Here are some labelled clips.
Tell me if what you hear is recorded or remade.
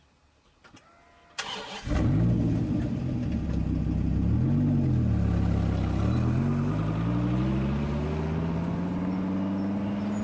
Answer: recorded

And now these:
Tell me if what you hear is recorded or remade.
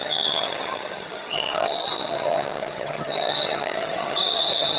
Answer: remade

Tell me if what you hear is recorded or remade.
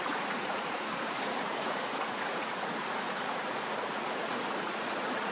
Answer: remade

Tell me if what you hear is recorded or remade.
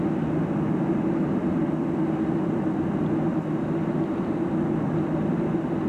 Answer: recorded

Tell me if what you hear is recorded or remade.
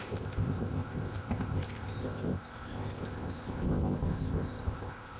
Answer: remade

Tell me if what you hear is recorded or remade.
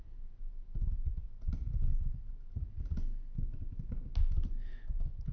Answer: recorded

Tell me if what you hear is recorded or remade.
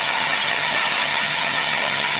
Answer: remade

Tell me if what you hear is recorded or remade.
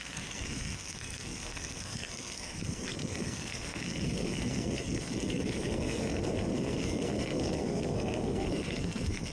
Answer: remade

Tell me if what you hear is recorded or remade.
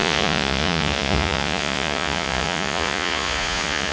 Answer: remade